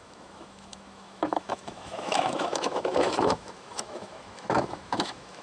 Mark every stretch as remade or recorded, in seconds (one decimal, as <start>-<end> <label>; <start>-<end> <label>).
0.0-5.4 remade